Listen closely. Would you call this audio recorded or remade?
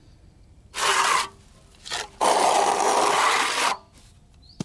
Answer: recorded